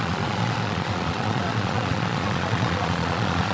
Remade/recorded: remade